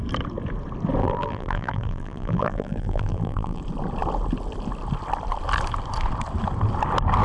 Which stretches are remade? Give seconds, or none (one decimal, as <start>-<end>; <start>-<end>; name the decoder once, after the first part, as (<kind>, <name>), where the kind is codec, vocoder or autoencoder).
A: 1.0-3.6 (vocoder, BigVGAN v2)